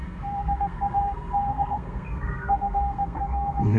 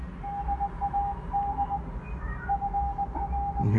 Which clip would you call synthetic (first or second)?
first